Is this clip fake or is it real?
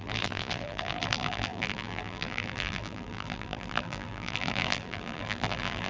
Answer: fake